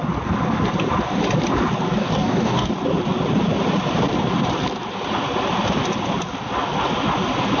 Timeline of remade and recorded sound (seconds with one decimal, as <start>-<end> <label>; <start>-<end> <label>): 0.0-2.0 recorded; 2.0-2.7 remade; 2.7-7.6 recorded